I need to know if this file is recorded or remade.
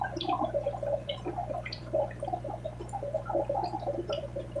remade